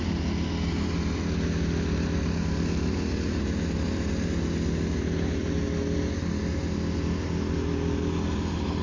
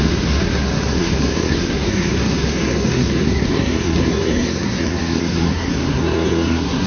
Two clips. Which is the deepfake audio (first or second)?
second